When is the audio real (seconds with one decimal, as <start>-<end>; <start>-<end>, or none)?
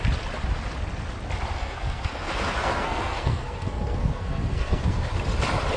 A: 0.0-1.6; 5.1-5.8